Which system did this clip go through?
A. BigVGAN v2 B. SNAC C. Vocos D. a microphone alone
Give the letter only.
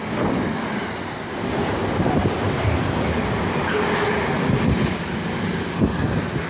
D